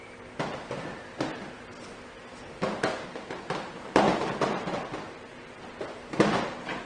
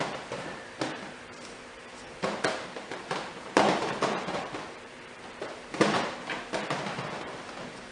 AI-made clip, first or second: second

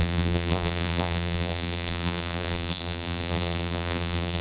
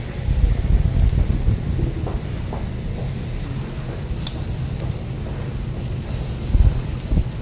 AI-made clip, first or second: first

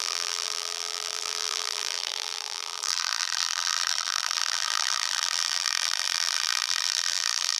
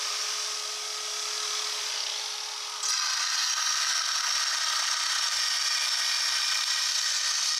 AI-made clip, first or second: first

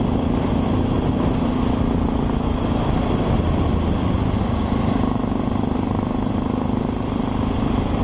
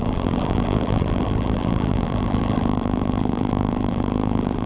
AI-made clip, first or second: second